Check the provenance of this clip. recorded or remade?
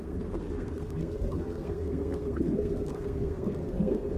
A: remade